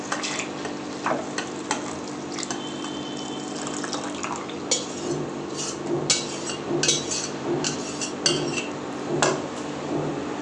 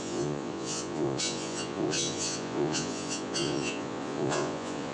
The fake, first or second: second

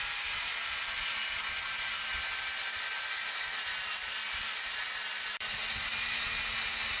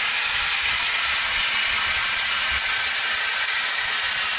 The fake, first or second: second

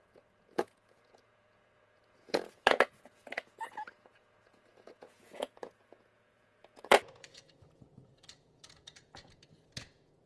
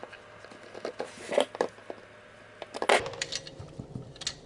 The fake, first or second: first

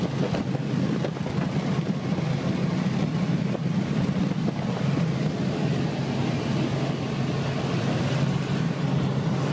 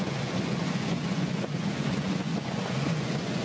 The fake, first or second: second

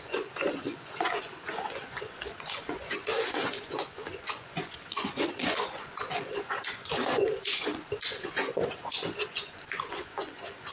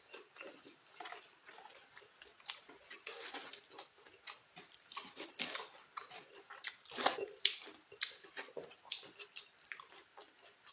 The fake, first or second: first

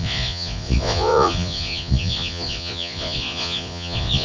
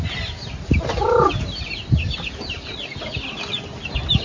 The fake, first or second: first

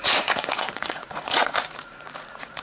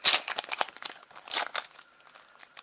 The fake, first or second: first